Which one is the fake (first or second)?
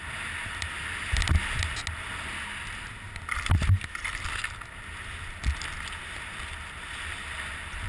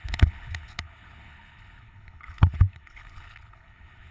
second